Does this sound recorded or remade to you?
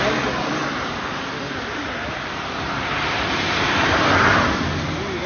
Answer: recorded